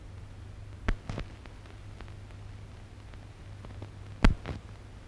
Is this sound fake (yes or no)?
no